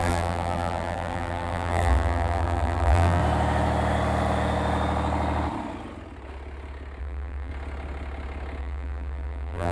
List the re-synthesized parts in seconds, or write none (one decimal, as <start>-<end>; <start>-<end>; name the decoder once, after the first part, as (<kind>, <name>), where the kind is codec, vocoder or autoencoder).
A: 0.0-3.2 (vocoder, BigVGAN v2); 7.0-7.5; 8.6-9.7